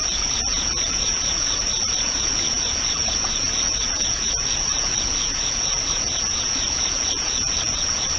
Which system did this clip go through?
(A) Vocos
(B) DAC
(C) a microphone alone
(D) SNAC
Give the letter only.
A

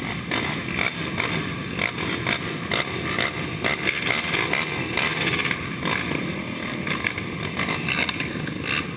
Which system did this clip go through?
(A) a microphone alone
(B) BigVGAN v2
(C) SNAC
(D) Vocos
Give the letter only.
A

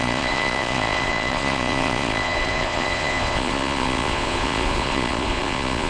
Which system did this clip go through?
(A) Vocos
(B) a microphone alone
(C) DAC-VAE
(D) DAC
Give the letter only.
A